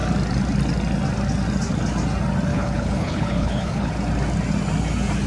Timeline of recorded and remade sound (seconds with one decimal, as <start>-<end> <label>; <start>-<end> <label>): 0.0-2.5 recorded; 2.5-3.9 remade; 3.9-5.3 recorded